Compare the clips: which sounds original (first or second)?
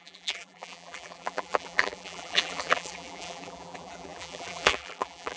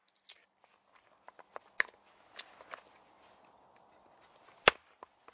second